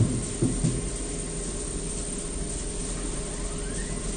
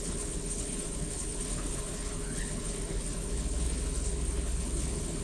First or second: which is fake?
second